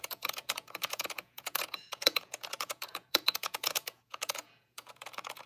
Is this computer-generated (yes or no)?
yes